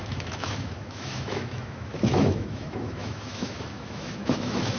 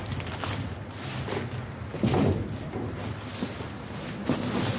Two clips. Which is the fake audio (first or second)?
first